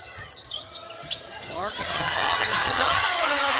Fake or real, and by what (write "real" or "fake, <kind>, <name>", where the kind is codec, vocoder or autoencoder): fake, vocoder, HiFi-GAN